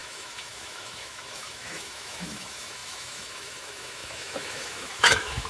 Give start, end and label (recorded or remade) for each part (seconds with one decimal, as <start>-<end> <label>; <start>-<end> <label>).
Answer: 0.0-5.5 remade